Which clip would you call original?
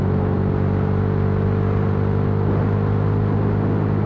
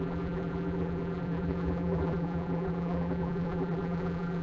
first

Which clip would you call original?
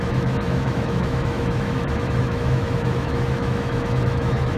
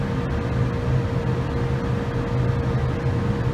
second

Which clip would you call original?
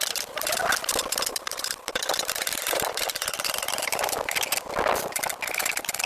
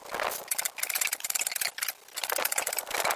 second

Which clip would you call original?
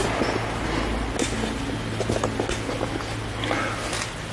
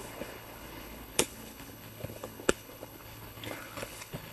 first